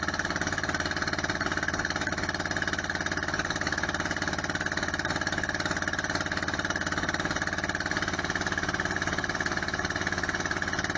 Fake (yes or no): no